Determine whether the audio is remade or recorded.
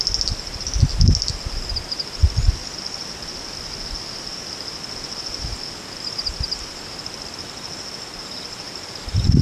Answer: recorded